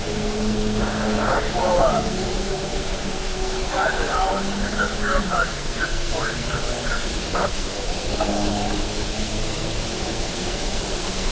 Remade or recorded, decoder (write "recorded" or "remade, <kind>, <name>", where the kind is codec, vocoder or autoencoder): remade, codec, SNAC